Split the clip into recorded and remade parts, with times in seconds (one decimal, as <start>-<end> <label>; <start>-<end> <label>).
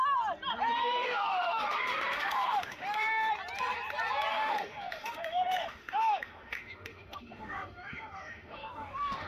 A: 0.0-0.8 recorded; 0.8-3.3 remade; 3.3-4.3 recorded; 4.3-9.3 remade